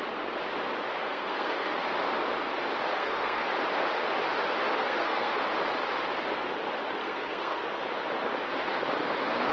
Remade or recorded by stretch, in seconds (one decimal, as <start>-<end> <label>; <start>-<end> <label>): 0.0-1.0 recorded; 1.0-1.7 remade; 1.7-2.9 recorded; 2.9-3.5 remade; 3.5-4.8 recorded; 4.8-5.4 remade; 5.4-7.0 recorded; 7.0-7.7 remade; 7.7-9.5 recorded